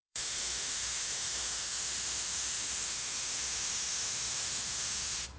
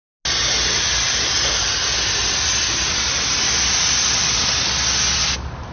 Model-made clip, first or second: first